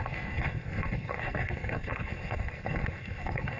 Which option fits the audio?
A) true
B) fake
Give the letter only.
B